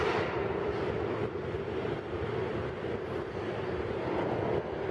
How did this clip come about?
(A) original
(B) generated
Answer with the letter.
A